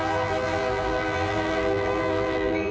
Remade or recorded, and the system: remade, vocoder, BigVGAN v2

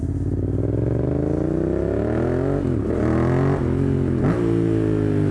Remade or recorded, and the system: recorded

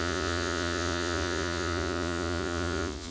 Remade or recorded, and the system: remade, vocoder, Vocos